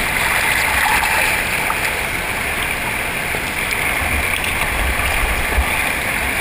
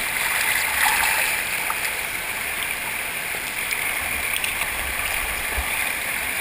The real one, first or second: first